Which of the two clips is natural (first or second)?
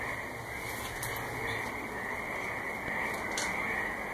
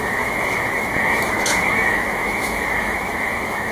first